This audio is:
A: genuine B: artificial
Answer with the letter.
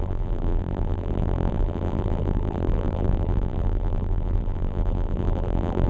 B